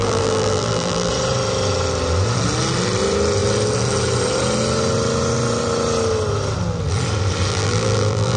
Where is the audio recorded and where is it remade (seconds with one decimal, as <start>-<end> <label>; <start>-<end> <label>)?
0.0-1.1 remade; 1.1-7.5 recorded; 7.5-8.4 remade